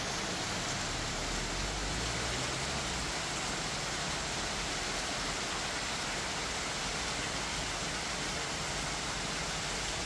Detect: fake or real real